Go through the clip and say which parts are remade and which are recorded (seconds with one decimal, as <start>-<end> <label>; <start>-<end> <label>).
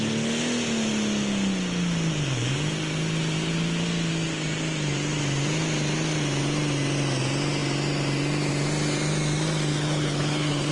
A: 0.0-9.7 recorded; 9.7-10.7 remade